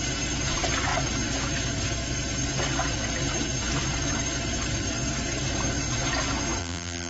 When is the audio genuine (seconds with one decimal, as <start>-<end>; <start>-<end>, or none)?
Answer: 0.0-6.6

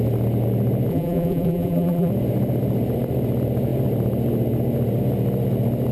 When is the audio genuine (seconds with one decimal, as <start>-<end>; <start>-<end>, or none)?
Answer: 0.0-0.9; 2.1-5.9

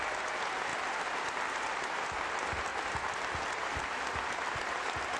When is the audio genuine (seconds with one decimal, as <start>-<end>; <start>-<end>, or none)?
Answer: 0.0-5.2